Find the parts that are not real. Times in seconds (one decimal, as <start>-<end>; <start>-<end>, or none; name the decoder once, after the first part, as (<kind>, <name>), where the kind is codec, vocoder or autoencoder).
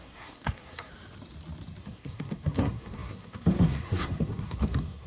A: 0.0-0.9 (codec, SNAC); 1.8-5.1